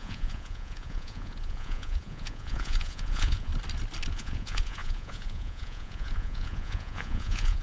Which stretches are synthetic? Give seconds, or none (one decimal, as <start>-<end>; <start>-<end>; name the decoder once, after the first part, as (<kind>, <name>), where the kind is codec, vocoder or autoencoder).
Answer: 0.0-3.5 (vocoder, Vocos); 4.1-7.6